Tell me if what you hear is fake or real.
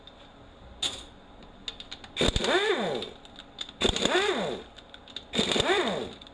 real